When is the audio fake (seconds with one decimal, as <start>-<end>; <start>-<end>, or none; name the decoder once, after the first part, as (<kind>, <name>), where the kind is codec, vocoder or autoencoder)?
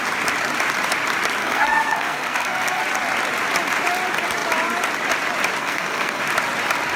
1.4-2.8 (codec, SNAC); 5.6-6.2